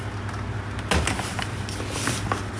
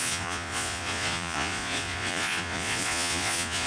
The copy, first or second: second